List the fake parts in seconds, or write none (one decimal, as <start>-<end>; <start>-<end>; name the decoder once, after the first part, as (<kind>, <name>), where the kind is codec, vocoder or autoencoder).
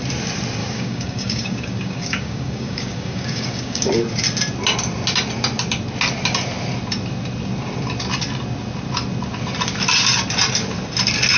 0.6-3.9 (codec, DAC)